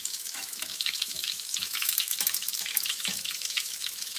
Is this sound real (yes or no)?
no